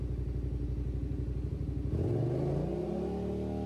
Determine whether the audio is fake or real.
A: real